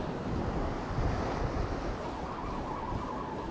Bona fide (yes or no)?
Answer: yes